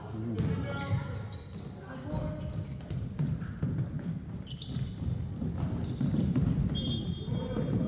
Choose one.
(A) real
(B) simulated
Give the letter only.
A